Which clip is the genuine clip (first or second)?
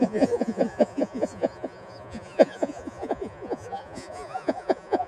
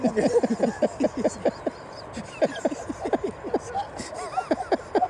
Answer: second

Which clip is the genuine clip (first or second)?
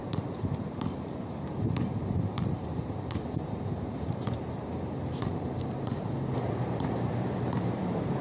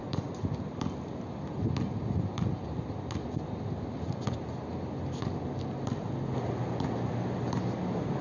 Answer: second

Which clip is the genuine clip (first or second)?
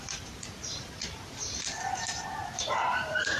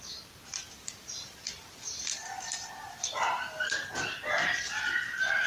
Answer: second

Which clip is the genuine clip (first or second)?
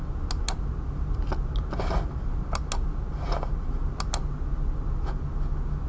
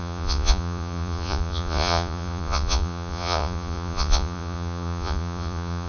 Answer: first